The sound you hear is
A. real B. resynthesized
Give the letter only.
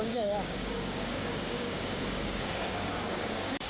B